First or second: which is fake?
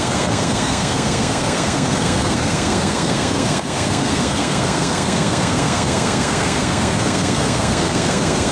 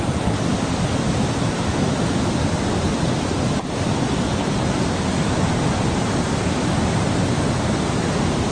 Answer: first